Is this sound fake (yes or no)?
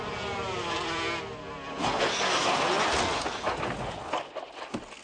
no